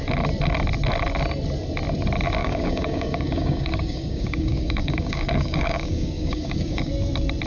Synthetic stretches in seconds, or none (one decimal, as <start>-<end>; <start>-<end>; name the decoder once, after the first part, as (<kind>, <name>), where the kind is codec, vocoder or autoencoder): 2.4-6.9 (codec, DAC)